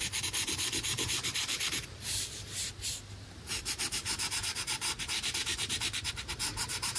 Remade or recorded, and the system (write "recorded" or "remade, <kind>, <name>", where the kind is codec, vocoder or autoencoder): remade, vocoder, BigVGAN v2